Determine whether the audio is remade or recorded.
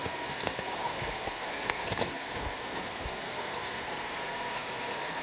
remade